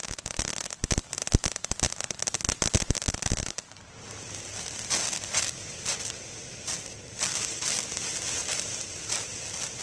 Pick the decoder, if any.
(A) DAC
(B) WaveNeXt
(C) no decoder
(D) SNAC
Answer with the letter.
C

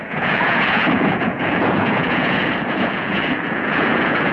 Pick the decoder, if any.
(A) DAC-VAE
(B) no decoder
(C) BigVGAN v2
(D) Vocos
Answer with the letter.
D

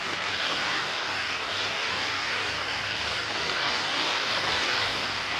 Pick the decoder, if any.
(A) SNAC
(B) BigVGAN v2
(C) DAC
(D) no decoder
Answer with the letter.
C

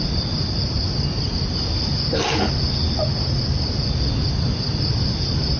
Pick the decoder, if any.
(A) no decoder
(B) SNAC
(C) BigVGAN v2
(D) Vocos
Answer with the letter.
A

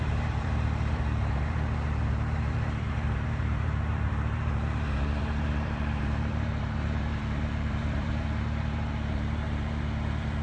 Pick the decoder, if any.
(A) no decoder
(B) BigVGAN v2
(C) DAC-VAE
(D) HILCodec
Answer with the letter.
B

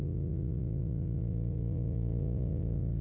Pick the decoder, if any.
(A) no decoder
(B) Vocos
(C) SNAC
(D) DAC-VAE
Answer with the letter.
B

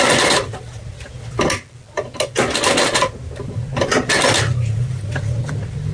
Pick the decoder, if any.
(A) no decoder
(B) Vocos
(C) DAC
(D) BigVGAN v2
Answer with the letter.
A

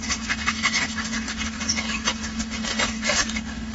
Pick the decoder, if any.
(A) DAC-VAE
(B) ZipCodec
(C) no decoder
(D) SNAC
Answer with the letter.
A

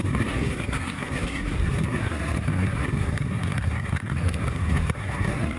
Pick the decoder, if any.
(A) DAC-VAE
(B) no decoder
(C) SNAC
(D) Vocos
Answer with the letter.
C